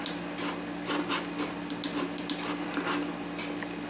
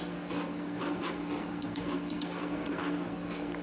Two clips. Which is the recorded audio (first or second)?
first